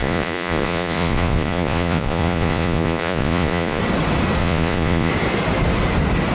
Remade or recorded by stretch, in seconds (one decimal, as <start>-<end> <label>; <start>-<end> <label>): 0.0-3.8 remade; 3.8-4.4 recorded; 4.4-5.1 remade; 5.1-6.3 recorded